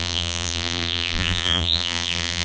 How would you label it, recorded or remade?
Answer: remade